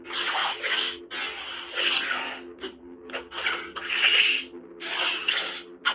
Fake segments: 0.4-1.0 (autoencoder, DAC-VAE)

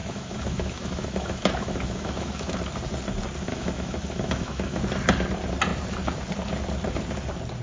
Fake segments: 0.0-2.6 (autoencoder, DAC-VAE); 3.5-4.8

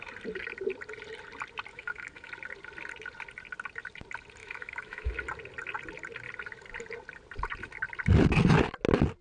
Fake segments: 1.7-2.3 (autoencoder, DAC-VAE); 4.4-5.1